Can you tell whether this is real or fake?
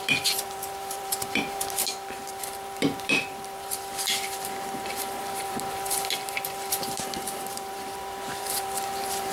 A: fake